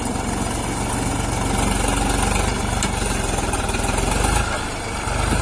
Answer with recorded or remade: recorded